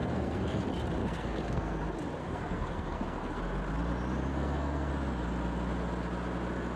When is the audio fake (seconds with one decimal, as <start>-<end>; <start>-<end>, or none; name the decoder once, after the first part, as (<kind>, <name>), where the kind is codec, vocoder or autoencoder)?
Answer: 0.0-0.6 (codec, SNAC); 1.0-1.8; 2.2-3.4; 4.3-4.9